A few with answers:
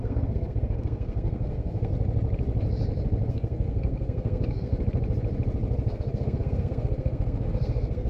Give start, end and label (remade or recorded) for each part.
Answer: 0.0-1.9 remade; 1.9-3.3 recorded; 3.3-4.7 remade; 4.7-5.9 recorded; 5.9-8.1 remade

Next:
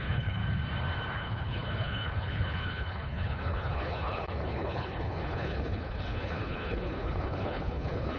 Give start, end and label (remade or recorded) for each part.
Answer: 0.0-0.4 remade; 0.4-1.2 recorded; 1.2-8.2 remade

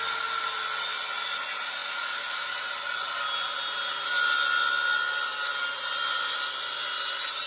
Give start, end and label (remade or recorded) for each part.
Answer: 0.0-7.5 recorded